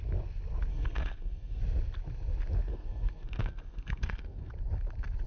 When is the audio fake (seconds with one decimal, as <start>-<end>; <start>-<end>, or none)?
0.7-1.6; 2.7-4.5

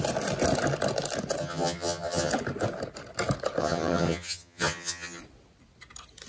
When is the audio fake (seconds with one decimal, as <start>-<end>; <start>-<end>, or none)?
1.4-2.3; 3.6-5.2

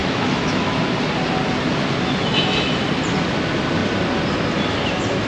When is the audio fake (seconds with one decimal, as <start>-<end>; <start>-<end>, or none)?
0.0-0.7; 2.2-2.8

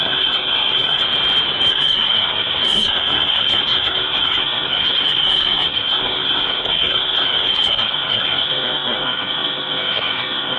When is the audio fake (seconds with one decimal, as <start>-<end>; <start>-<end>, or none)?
0.0-1.0; 1.7-10.6

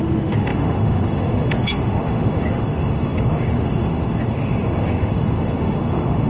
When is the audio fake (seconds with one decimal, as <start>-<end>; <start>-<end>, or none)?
0.0-6.3

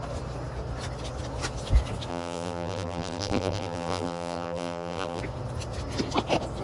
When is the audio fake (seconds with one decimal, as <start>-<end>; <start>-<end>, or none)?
2.1-5.2